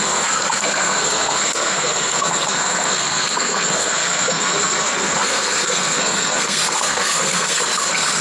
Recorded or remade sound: remade